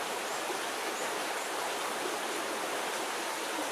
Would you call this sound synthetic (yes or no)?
no